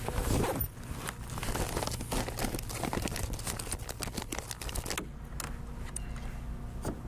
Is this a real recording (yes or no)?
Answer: yes